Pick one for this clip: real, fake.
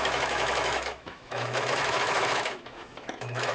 fake